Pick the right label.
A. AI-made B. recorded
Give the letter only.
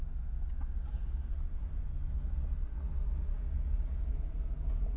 B